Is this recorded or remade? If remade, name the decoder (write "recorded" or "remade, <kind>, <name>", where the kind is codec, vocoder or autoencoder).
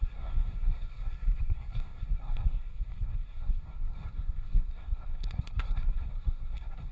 remade, codec, SNAC